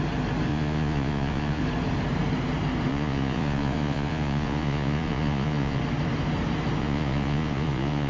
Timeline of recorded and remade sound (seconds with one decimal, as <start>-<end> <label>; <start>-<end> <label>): 0.0-0.5 recorded; 0.5-1.6 remade; 1.6-2.9 recorded; 2.9-5.8 remade; 5.8-6.8 recorded; 6.8-8.1 remade